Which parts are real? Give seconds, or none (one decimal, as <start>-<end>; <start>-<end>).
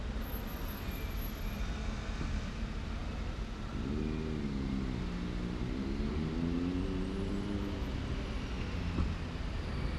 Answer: 0.0-10.0